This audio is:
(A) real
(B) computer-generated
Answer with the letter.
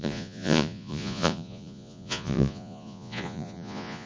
B